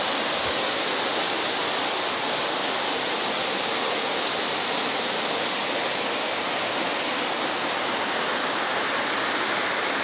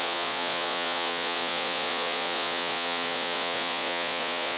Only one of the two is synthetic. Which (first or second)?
second